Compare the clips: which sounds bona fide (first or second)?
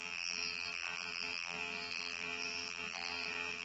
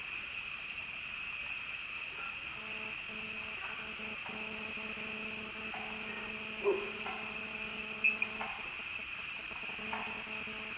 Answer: second